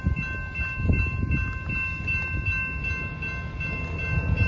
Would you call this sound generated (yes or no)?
no